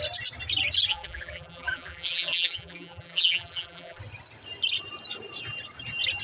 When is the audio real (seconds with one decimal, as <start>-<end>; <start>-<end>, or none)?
0.0-0.9; 4.0-6.2